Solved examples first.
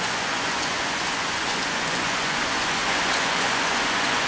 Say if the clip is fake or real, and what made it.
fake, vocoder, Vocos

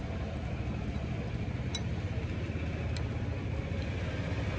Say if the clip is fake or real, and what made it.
real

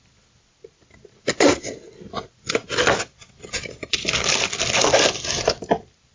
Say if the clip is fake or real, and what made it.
fake, vocoder, BigVGAN v2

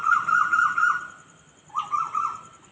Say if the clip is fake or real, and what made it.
real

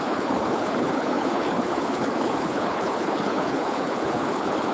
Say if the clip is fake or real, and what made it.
fake, codec, HILCodec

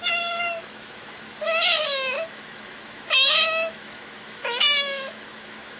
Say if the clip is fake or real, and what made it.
fake, autoencoder, DAC-VAE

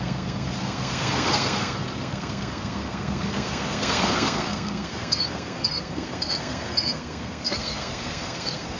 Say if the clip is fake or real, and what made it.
fake, codec, SNAC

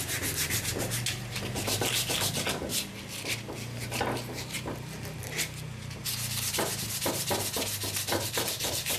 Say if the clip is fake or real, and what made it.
real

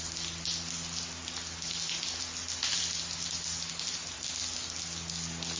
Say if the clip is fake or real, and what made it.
real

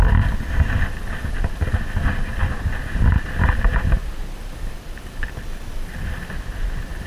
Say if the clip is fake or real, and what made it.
real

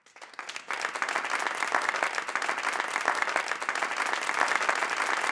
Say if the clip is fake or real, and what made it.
real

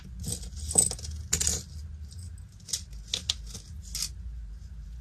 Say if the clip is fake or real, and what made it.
real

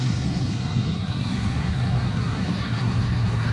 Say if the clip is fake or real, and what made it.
fake, codec, SNAC